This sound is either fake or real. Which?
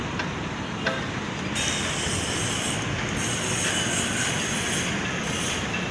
real